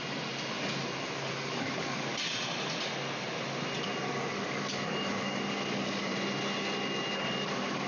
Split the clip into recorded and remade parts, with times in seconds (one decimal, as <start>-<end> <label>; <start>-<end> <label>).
0.0-1.3 recorded; 1.3-2.1 remade; 2.1-4.1 recorded; 4.1-6.1 remade; 6.1-7.1 recorded; 7.1-7.9 remade